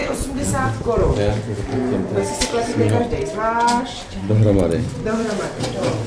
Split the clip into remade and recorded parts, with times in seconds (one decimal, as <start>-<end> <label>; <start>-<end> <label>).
0.0-0.5 remade; 0.5-6.1 recorded